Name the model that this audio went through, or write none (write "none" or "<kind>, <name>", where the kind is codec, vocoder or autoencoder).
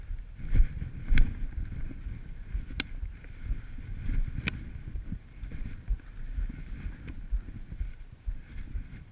none